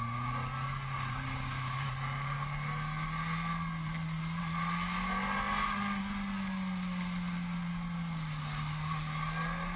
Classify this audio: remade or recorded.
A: recorded